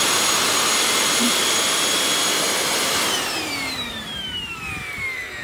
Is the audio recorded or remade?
remade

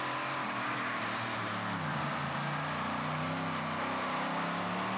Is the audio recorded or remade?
recorded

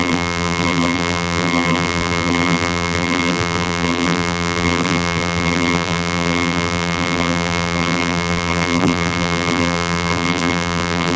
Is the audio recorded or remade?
remade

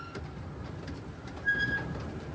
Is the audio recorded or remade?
recorded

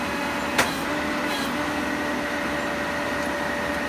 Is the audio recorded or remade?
recorded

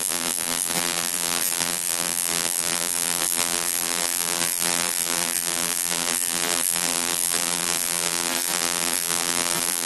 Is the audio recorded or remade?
remade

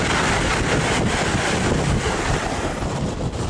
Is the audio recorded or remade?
recorded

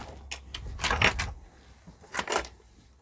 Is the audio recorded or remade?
recorded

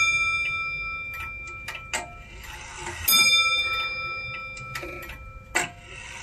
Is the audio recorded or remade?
recorded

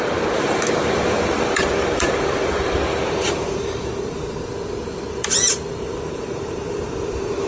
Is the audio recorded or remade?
remade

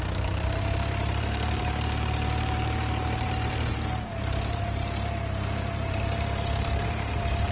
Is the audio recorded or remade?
remade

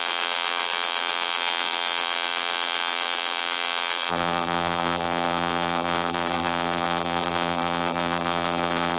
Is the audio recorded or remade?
remade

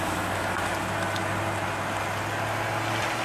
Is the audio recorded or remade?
recorded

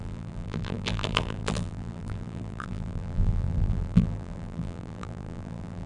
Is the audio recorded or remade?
remade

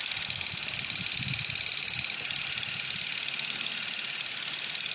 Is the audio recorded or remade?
remade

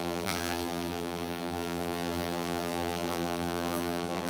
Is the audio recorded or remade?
remade